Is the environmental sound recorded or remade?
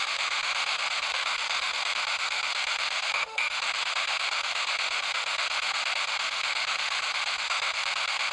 remade